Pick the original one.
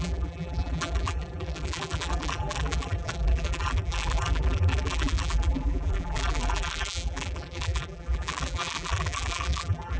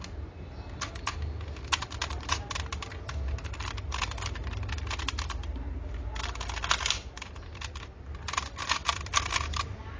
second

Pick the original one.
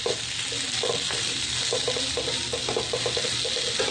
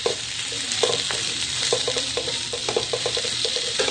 first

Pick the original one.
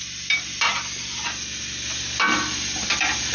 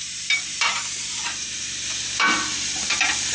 first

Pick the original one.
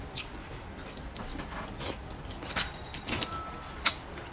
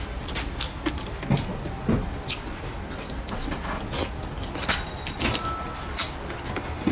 second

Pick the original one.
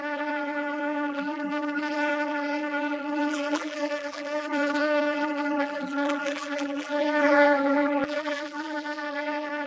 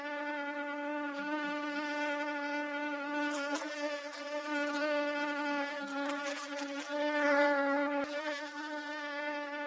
second